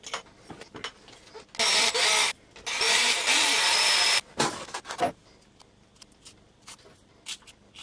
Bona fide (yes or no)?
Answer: yes